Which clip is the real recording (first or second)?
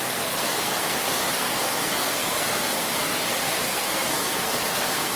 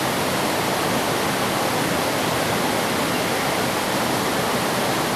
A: second